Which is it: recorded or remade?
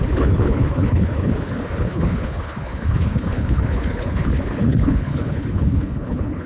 remade